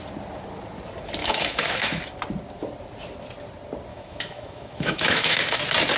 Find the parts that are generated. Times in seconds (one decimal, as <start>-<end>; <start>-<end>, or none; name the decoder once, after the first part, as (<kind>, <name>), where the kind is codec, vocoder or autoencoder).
1.2-2.0 (autoencoder, DAC-VAE); 3.9-5.6